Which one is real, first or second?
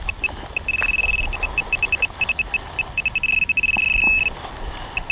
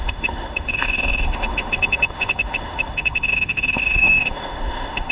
first